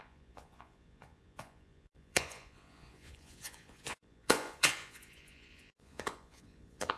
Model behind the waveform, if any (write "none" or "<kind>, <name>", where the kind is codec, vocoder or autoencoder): vocoder, Vocos